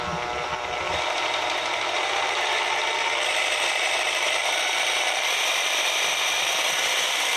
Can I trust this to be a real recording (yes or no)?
no